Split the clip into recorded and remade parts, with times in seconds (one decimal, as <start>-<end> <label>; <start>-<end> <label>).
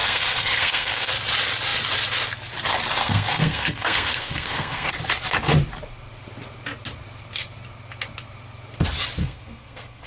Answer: 0.0-1.1 remade; 1.1-3.0 recorded; 3.0-4.9 remade; 4.9-9.2 recorded; 9.2-10.1 remade